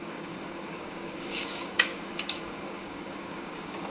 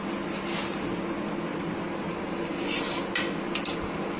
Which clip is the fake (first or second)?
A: first